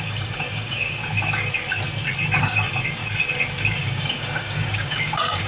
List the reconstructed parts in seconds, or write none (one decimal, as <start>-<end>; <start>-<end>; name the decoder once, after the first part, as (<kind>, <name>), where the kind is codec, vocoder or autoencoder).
0.0-1.0 (codec, DAC); 2.4-3.0; 3.6-5.5